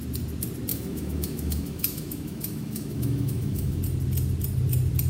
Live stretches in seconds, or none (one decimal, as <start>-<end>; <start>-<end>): 0.0-0.7; 3.8-5.1